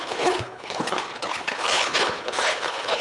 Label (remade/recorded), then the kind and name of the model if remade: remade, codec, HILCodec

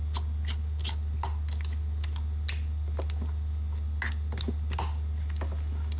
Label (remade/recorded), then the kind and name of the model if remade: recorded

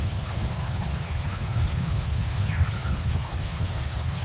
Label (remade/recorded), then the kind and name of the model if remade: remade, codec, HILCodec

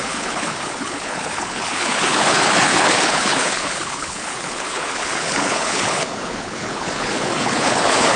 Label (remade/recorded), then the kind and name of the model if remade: remade, codec, HILCodec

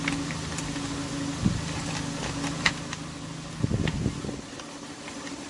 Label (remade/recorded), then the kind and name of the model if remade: recorded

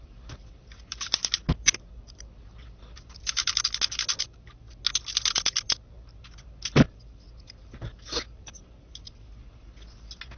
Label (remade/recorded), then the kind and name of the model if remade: recorded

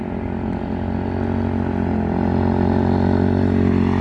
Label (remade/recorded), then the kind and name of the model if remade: recorded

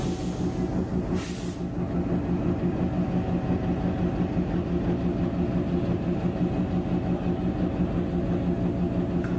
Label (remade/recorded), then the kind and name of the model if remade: recorded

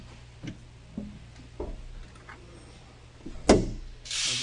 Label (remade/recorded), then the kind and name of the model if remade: recorded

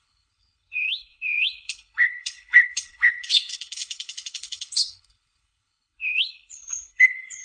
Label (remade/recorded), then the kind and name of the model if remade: remade, codec, HILCodec